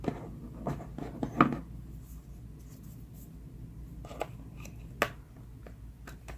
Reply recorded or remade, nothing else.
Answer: recorded